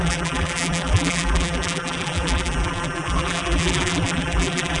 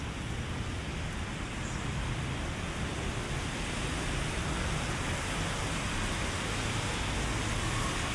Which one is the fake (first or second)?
first